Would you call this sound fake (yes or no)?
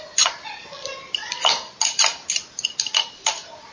no